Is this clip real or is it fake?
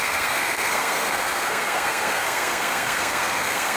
fake